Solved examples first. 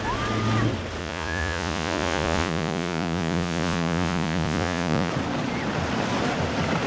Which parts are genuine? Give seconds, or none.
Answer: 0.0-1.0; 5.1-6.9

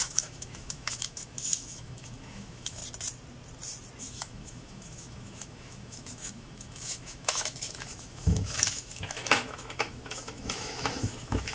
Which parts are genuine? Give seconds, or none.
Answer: 2.8-4.0

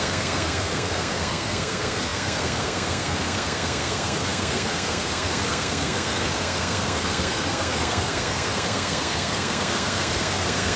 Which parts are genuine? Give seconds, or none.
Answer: none

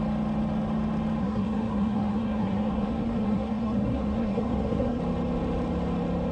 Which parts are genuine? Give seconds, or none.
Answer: 0.0-1.2; 5.0-6.3

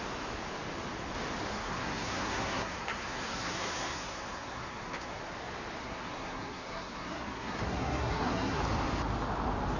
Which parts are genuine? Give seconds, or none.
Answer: 0.0-1.5; 5.2-5.8; 8.6-9.8

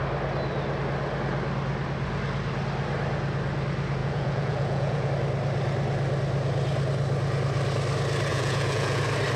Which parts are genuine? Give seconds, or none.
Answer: 0.0-4.0; 5.1-8.3; 9.0-9.4

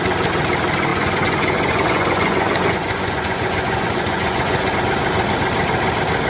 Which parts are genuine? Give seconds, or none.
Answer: 0.0-0.9; 4.7-6.3

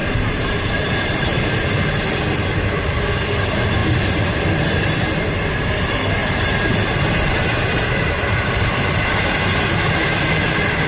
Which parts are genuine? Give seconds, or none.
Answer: 1.4-6.2; 10.0-10.9